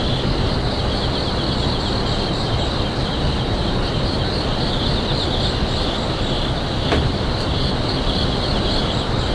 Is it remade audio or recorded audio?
recorded